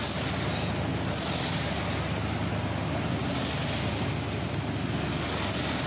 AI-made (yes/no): no